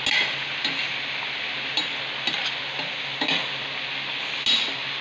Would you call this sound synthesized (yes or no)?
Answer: no